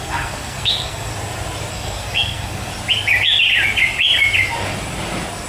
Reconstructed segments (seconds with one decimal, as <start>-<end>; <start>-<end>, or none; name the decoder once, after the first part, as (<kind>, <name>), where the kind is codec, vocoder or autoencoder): 0.0-1.1 (codec, SNAC); 1.7-2.7